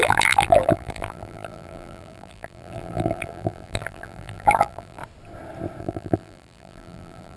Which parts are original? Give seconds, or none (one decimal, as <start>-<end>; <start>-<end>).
5.0-5.8